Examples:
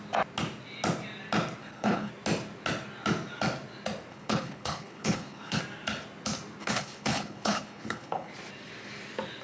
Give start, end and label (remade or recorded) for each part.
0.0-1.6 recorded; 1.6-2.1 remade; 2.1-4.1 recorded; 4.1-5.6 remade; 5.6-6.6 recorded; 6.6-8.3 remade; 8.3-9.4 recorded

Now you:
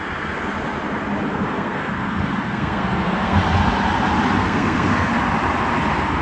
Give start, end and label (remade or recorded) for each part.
0.0-1.3 recorded; 1.3-3.4 remade; 3.4-4.4 recorded; 4.4-5.1 remade; 5.1-6.2 recorded